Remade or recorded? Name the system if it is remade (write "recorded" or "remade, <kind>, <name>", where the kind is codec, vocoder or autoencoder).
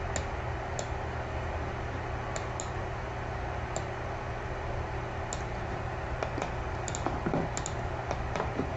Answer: recorded